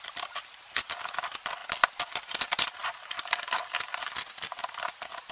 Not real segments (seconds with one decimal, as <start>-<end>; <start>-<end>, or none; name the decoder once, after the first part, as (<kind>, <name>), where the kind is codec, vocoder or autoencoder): none